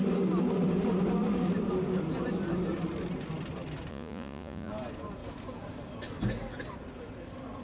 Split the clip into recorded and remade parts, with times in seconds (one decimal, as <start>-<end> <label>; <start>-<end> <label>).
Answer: 0.0-3.9 recorded; 3.9-4.7 remade; 4.7-7.6 recorded